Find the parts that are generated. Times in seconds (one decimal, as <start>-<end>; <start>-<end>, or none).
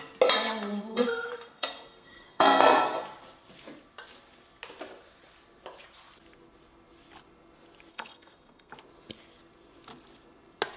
0.9-3.0; 7.9-8.7